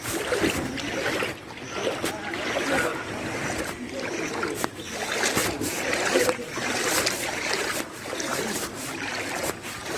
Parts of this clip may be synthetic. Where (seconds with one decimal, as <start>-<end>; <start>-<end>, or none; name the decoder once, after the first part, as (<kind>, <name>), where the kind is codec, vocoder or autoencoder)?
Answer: 2.9-4.3 (vocoder, BigVGAN v2); 5.4-6.7; 8.3-9.1